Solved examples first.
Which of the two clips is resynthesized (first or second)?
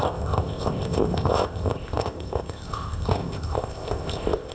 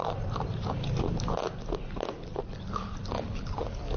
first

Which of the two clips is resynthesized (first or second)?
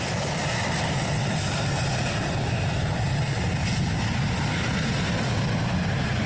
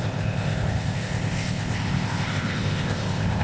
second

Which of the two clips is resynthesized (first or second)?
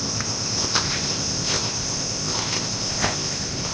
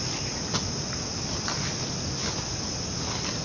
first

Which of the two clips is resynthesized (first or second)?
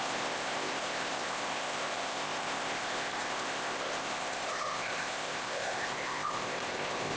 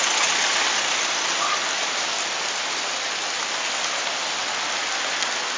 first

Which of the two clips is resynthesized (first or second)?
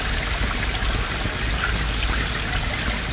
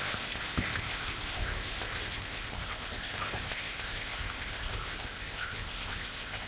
second